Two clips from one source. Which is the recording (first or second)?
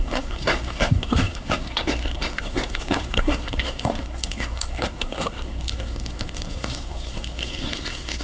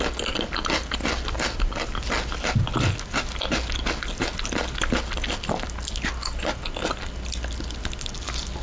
second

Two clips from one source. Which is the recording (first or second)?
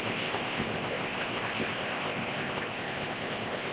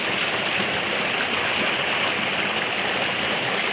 second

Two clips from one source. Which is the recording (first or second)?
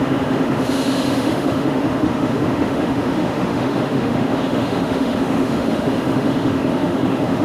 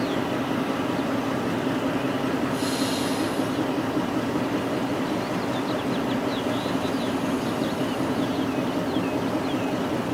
second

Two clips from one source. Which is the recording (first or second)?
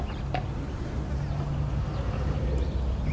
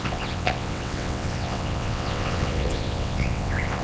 first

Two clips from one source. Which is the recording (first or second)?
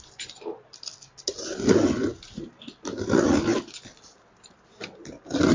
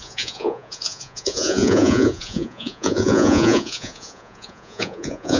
first